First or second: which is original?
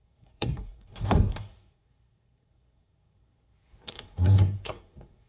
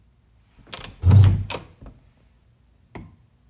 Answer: second